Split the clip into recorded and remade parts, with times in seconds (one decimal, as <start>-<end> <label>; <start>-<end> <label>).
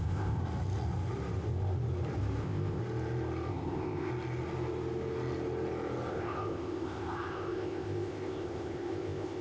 0.0-0.4 remade; 0.4-2.4 recorded; 2.4-2.8 remade; 2.8-3.5 recorded; 3.5-4.1 remade; 4.1-6.1 recorded; 6.1-9.4 remade